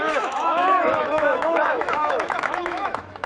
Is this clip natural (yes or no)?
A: no